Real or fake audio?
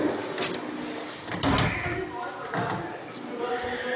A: real